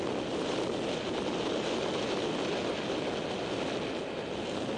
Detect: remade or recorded recorded